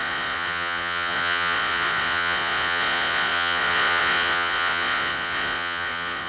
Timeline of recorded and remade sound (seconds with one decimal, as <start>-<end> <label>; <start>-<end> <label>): 0.0-6.3 remade